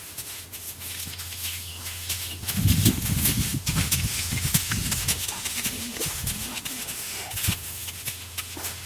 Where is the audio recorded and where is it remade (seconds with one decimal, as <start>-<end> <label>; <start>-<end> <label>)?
0.0-8.9 remade